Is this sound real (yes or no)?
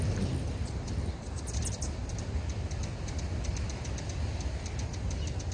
yes